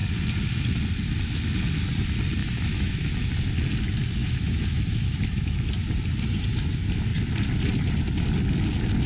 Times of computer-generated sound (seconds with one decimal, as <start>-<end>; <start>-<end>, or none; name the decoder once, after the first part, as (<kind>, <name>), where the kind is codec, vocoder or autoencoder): 2.4-3.3 (autoencoder, DAC-VAE); 4.2-5.6